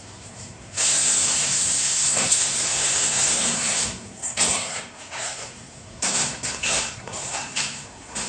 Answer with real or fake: fake